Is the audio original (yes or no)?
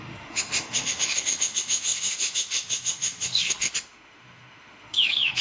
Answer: no